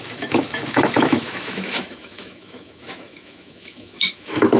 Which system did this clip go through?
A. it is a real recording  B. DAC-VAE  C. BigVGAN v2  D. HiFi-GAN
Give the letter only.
B